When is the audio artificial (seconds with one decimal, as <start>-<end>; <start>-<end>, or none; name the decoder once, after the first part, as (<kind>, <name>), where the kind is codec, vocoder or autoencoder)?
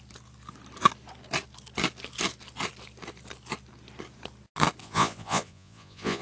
4.8-6.2 (vocoder, Vocos)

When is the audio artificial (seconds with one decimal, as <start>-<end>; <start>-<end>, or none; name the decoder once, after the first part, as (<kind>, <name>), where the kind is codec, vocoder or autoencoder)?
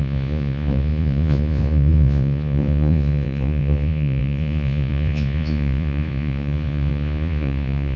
0.0-8.0 (vocoder, Vocos)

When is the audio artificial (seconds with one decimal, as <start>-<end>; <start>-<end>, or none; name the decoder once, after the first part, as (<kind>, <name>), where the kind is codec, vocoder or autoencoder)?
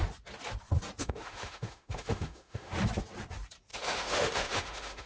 1.0-2.7 (autoencoder, DAC-VAE); 3.7-5.1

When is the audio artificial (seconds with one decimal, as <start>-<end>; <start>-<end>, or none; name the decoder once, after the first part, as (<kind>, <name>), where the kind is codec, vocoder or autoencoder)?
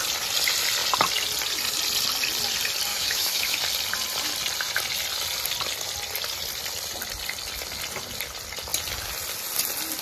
2.9-3.6 (autoencoder, DAC-VAE)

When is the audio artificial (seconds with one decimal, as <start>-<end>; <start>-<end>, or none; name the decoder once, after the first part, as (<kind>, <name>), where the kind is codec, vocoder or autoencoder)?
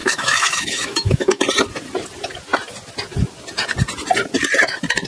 0.0-1.4 (autoencoder, DAC-VAE)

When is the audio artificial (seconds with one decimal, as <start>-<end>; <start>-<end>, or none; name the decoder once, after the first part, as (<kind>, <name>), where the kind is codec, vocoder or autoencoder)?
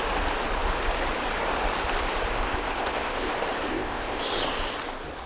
2.3-3.3 (codec, ZipCodec); 3.7-4.2